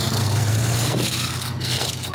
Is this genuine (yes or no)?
no